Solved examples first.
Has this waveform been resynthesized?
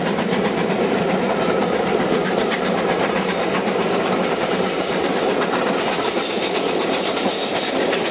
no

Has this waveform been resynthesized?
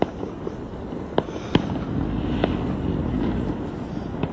no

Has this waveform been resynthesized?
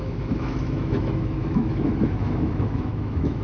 yes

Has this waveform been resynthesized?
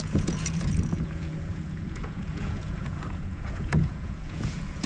yes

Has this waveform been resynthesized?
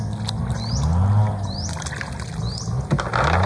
no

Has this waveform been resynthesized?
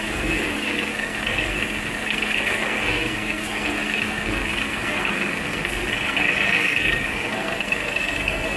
yes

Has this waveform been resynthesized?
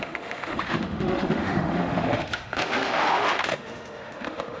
yes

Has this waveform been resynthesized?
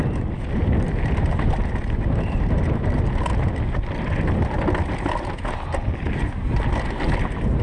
no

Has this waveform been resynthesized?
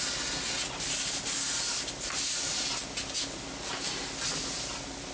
no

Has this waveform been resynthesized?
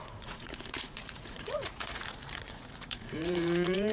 yes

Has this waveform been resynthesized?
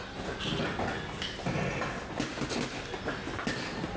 no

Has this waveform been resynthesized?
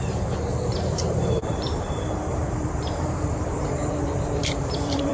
yes